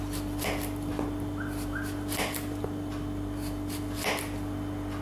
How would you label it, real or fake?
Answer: real